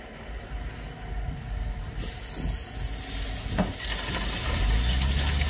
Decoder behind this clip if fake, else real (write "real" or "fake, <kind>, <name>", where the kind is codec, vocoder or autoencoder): real